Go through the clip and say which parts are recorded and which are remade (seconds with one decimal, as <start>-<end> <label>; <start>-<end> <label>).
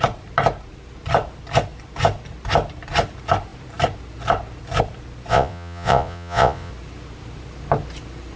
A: 0.0-5.3 recorded; 5.3-6.7 remade; 6.7-8.4 recorded